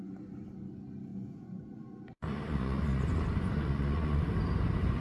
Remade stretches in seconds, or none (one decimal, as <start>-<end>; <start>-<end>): 1.1-1.8; 2.2-4.3